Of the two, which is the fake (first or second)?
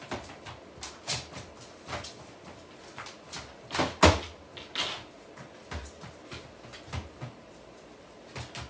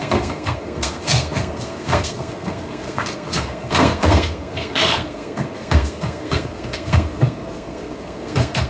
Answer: second